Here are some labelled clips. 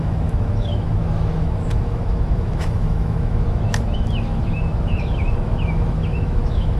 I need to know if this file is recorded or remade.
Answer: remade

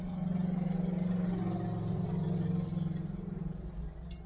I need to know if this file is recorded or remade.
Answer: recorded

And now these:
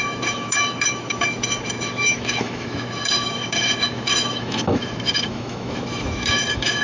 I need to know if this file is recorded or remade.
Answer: remade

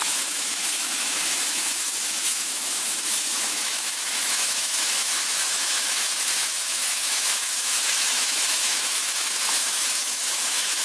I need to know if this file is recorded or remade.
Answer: remade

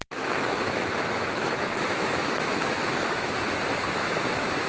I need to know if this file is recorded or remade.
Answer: remade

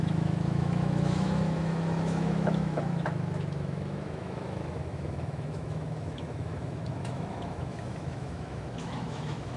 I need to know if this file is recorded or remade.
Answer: remade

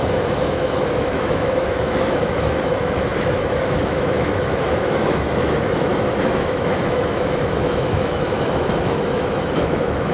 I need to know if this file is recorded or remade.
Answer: remade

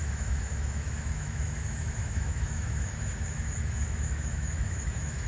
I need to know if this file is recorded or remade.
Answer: remade